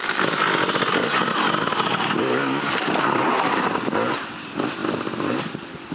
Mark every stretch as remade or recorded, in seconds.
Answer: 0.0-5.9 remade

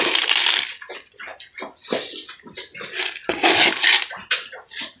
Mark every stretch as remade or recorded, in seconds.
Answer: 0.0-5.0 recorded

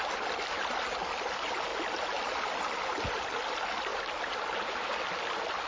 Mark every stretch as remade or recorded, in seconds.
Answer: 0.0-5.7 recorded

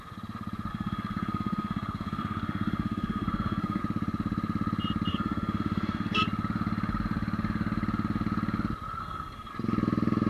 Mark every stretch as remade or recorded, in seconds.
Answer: 0.0-0.7 recorded; 0.7-3.8 remade; 3.8-5.1 recorded; 5.1-6.2 remade; 6.2-9.0 recorded; 9.0-9.5 remade; 9.5-10.3 recorded

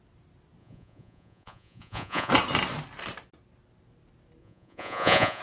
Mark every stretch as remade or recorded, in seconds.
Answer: 0.0-0.6 recorded; 0.6-2.3 remade; 2.3-4.4 recorded; 4.4-5.4 remade